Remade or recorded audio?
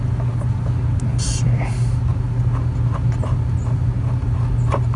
recorded